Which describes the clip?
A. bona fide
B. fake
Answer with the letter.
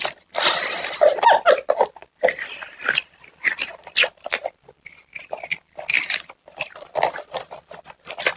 A